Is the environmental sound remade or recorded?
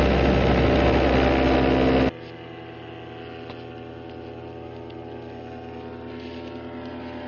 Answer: recorded